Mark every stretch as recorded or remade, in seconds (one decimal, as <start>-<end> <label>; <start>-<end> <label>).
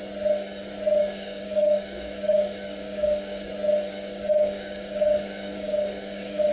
0.0-1.0 recorded; 1.0-3.5 remade; 3.5-3.9 recorded; 3.9-6.5 remade